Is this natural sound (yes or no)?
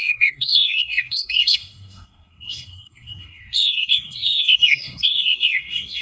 no